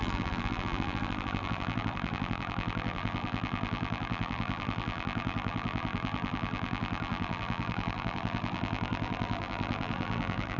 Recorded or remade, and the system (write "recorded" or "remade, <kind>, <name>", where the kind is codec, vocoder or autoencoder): remade, vocoder, BigVGAN v2